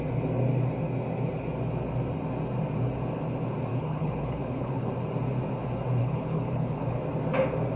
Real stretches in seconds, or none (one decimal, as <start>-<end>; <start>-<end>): 0.0-3.7; 4.9-6.0; 7.0-7.8